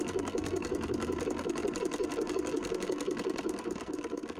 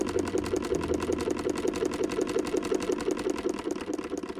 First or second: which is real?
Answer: second